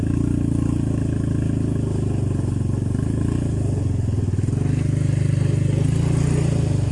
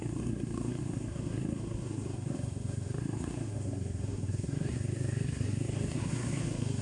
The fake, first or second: second